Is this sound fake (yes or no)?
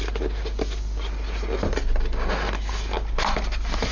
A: no